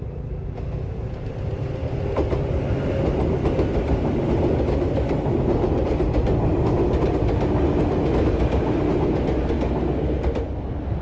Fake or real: real